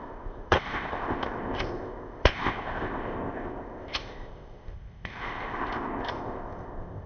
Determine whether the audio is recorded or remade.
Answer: remade